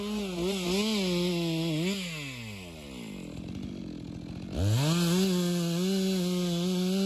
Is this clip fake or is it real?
real